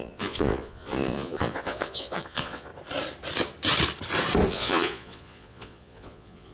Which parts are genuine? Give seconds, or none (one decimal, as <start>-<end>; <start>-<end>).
2.7-4.5